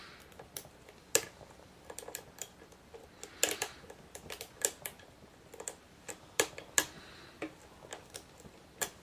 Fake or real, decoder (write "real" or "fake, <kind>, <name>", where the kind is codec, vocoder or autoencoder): real